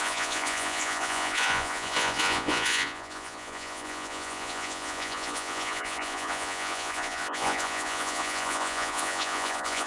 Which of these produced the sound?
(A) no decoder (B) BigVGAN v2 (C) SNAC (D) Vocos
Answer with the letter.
D